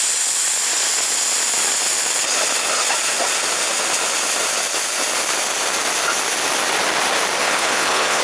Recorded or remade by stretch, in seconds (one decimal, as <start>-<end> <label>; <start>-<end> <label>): 0.0-7.4 recorded; 7.4-8.2 remade

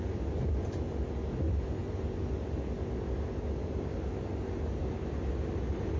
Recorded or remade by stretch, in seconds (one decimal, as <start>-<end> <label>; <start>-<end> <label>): 0.0-6.0 recorded

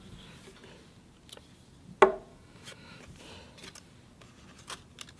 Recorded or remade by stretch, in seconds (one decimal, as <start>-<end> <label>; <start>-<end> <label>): 0.0-2.3 recorded; 2.3-3.0 remade; 3.0-5.2 recorded

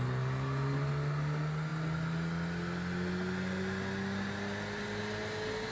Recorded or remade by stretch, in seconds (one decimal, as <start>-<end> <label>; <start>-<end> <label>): 0.0-5.7 recorded

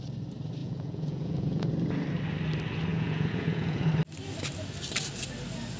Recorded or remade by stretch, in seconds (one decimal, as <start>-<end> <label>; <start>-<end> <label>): 0.0-0.6 recorded; 0.6-1.7 remade; 1.7-2.9 recorded; 2.9-3.9 remade; 3.9-5.8 recorded

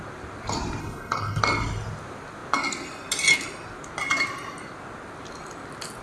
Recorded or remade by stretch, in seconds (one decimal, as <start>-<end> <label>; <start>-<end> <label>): 0.0-0.8 recorded; 0.8-1.4 remade; 1.4-6.0 recorded

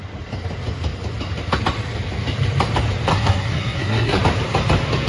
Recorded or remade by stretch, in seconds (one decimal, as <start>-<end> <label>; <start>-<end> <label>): 0.0-3.1 recorded; 3.1-4.2 remade; 4.2-5.1 recorded

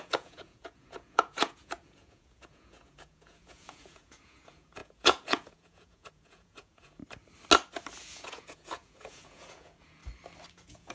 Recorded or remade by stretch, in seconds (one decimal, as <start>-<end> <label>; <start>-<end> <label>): 0.0-7.0 remade; 7.0-8.0 recorded; 8.0-10.0 remade; 10.0-10.5 recorded; 10.5-10.9 remade